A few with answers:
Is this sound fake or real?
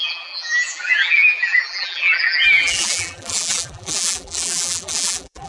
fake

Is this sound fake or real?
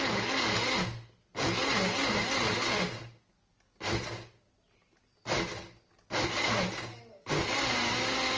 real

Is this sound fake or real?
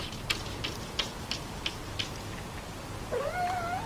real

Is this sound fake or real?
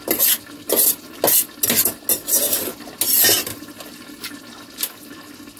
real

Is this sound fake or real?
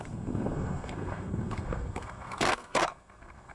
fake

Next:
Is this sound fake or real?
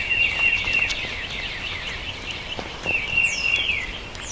real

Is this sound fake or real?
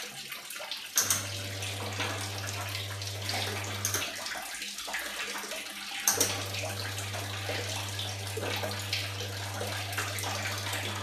real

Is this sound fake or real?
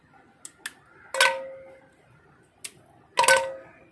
real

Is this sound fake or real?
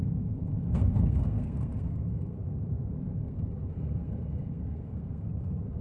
fake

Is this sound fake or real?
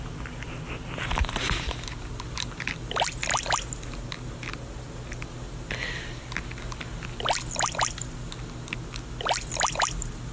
real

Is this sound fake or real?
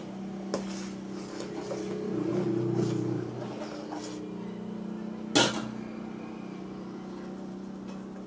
real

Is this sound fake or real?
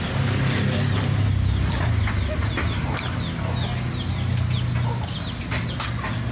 real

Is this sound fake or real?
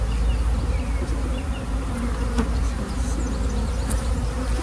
real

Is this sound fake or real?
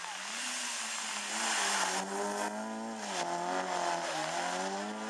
real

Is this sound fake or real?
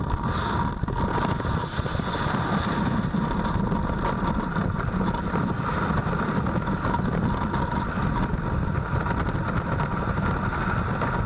real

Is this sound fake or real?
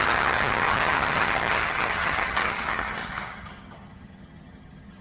fake